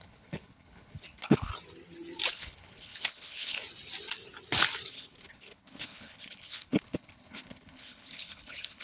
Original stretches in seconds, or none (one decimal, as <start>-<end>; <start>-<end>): 1.5-2.3; 3.6-4.9